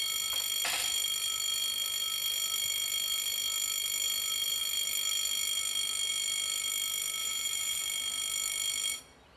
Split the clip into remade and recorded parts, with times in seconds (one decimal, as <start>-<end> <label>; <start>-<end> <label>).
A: 0.0-7.2 recorded; 7.2-7.8 remade; 7.8-9.4 recorded